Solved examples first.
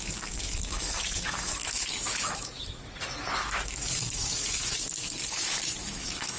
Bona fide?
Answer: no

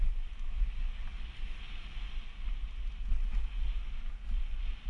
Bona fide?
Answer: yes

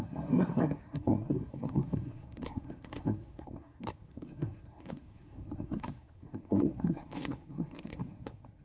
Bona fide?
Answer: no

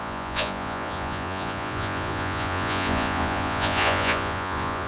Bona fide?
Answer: no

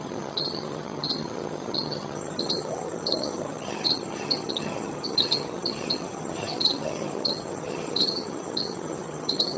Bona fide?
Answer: no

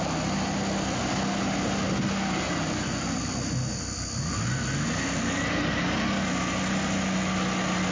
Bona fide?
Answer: yes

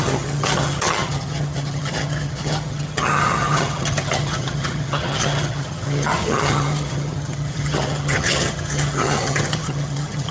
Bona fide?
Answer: no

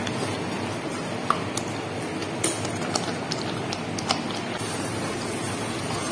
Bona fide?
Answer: yes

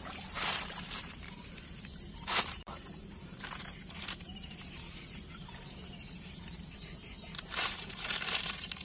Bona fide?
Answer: no